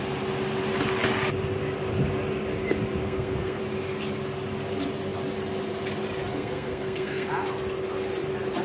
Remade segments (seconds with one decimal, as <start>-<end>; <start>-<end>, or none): 3.0-3.6; 6.3-7.3